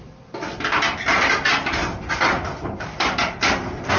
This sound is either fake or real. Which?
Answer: real